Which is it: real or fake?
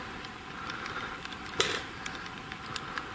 fake